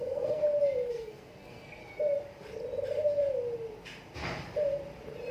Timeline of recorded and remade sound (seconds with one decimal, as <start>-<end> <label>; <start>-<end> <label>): 0.0-0.4 remade; 0.4-0.9 recorded; 0.9-1.8 remade; 1.8-5.3 recorded